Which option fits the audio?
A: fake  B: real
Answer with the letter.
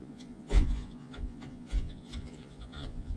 A